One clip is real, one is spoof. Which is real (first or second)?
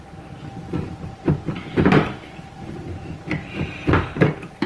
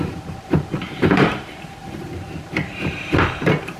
first